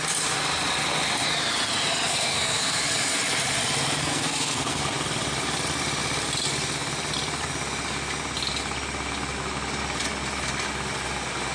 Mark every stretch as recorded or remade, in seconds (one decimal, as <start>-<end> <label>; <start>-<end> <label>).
0.0-2.1 recorded; 2.1-3.2 remade; 3.2-4.0 recorded; 4.0-4.8 remade; 4.8-11.5 recorded